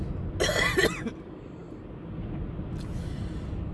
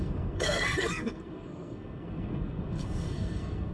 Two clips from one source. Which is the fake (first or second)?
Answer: second